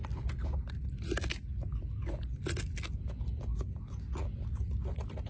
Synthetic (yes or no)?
no